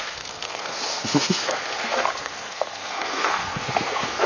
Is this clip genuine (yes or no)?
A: no